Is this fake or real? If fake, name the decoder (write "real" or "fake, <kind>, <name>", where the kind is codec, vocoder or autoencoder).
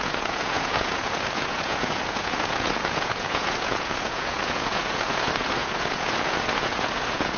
fake, vocoder, Vocos